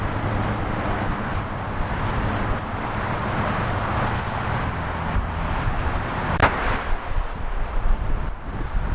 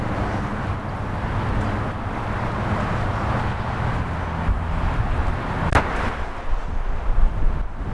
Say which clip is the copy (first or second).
first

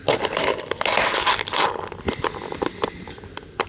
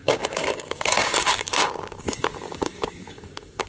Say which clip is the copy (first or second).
second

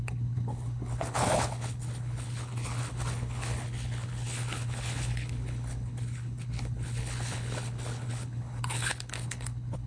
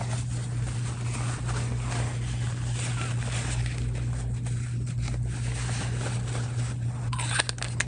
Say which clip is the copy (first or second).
first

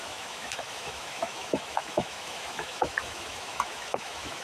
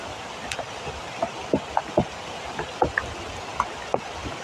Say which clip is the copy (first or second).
first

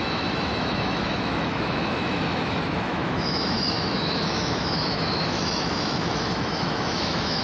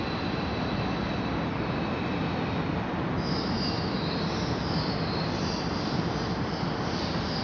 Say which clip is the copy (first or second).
first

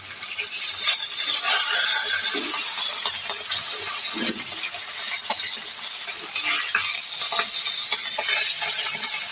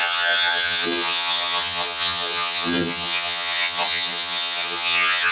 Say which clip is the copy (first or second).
second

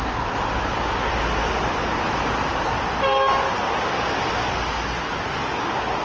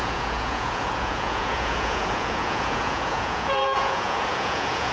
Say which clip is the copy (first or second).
second